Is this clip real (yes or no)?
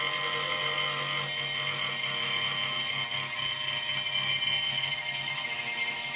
yes